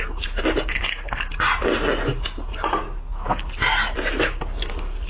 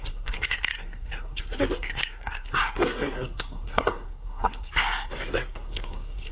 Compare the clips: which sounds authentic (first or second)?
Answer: first